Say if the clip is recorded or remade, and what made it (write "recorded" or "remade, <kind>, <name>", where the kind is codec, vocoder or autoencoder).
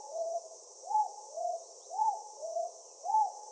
remade, vocoder, Vocos